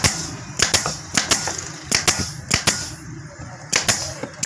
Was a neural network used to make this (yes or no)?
no